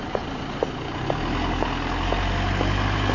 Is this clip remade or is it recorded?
recorded